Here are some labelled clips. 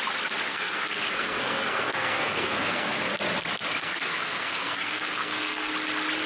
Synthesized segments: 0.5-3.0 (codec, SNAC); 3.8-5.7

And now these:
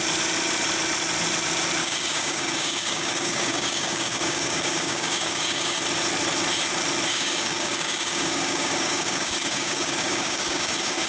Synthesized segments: 1.8-5.8 (codec, DAC); 7.1-11.1

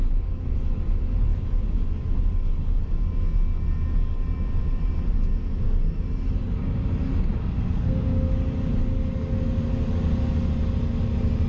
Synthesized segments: 7.4-8.3 (codec, SNAC)

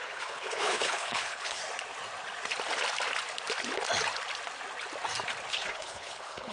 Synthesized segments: 0.0-1.6 (codec, HILCodec); 5.5-6.5

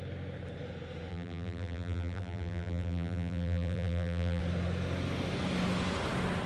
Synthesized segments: 1.1-4.4 (vocoder, BigVGAN v2)

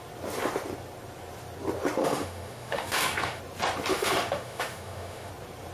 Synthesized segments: 2.0-3.4 (autoencoder, DAC-VAE); 3.9-5.3

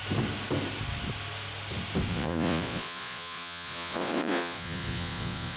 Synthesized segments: 2.1-5.6 (vocoder, Vocos)